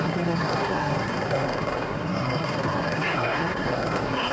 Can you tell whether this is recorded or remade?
remade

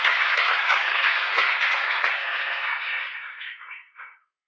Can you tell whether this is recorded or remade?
remade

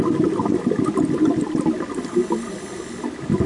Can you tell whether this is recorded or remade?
recorded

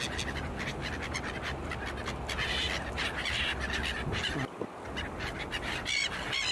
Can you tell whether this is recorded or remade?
recorded